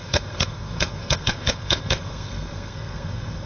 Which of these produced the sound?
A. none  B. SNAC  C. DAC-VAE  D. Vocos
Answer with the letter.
B